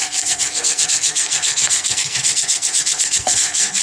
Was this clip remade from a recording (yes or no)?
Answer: yes